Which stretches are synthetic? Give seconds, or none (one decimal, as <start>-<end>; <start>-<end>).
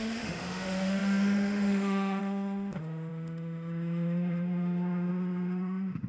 0.0-6.1